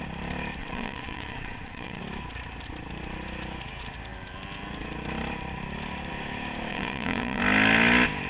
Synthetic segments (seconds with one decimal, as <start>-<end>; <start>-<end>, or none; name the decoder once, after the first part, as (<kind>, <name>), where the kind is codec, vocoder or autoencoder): 0.6-2.0 (vocoder, WaveNeXt); 6.7-7.4